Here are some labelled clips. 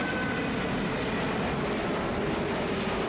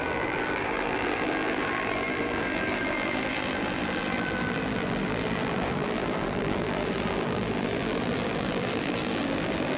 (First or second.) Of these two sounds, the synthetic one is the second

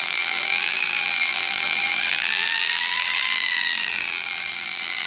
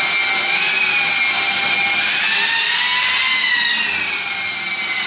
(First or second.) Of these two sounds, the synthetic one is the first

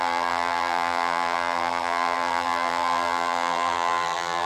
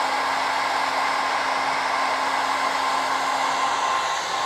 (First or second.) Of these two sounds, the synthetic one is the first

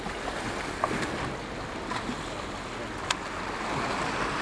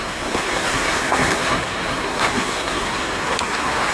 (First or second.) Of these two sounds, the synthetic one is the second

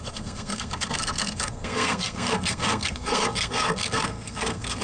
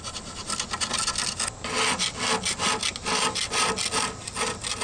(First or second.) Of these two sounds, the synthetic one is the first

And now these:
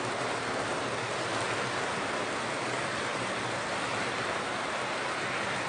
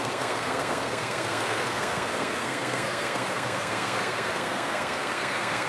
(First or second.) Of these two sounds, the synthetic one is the second